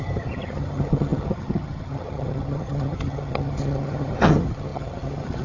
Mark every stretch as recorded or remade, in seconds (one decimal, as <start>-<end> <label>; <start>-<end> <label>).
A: 0.0-5.4 remade